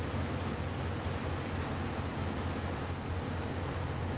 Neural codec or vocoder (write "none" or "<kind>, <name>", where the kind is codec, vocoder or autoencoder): none